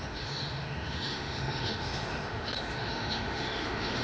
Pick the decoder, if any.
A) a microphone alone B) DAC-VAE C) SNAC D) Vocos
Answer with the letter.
B